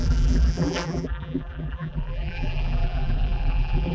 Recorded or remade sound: remade